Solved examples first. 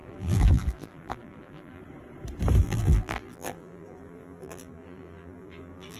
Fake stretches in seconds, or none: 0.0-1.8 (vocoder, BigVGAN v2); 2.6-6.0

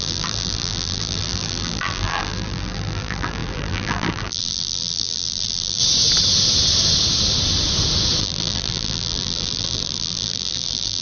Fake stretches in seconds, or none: 0.0-5.8 (vocoder, BigVGAN v2); 8.2-11.0

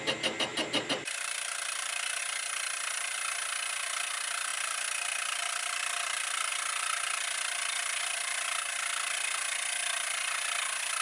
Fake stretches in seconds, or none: 0.5-2.2 (vocoder, BigVGAN v2); 4.5-6.5

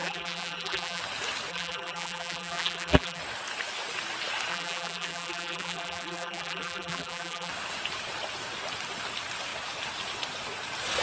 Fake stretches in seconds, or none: 0.0-1.0 (vocoder, BigVGAN v2); 1.5-3.2; 4.5-7.5